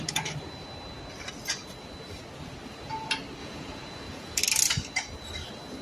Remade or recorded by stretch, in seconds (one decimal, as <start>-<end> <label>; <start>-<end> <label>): 0.0-3.4 recorded; 3.4-4.4 remade; 4.4-5.8 recorded